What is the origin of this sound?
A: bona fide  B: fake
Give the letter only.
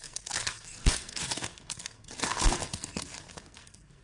B